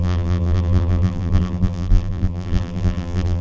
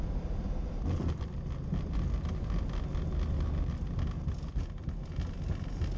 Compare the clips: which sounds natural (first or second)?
second